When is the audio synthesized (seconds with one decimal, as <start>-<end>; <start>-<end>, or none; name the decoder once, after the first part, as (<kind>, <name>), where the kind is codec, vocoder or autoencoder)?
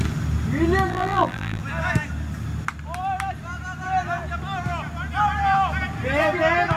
0.9-1.6 (vocoder, BigVGAN v2)